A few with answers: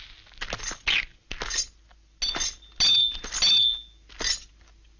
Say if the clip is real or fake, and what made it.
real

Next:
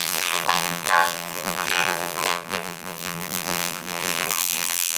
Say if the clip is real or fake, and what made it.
fake, vocoder, BigVGAN v2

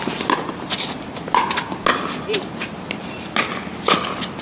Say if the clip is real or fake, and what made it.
real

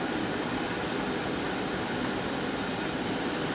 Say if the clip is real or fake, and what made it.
real